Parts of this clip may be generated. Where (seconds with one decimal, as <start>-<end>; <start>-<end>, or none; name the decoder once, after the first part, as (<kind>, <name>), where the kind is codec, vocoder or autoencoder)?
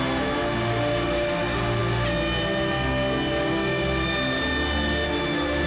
none